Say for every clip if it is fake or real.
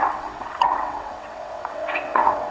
fake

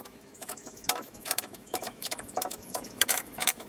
fake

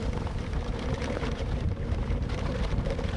fake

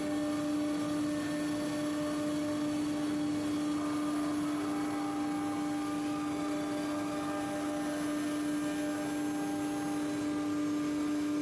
real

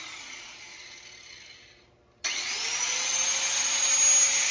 real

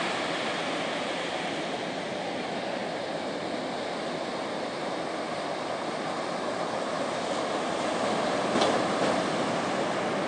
real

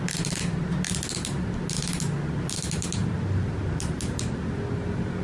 real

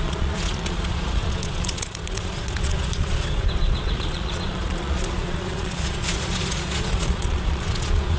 fake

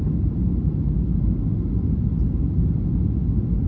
real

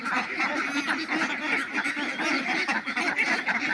fake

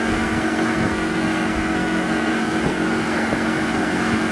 fake